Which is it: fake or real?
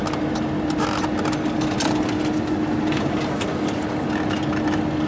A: real